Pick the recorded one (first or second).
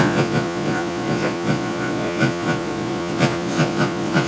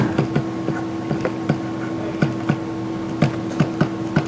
second